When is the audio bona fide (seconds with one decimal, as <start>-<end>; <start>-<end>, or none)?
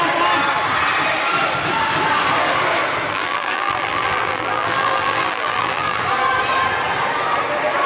0.0-3.1; 6.0-7.9